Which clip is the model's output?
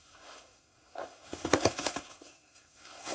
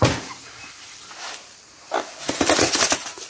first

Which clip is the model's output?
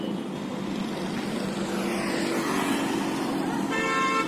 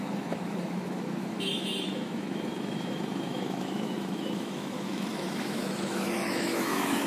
second